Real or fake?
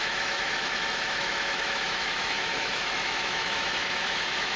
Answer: fake